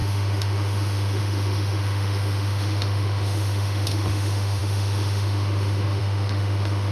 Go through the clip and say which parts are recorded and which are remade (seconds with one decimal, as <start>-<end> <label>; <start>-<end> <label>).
0.0-6.9 remade